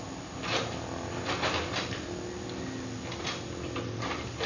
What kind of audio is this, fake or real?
real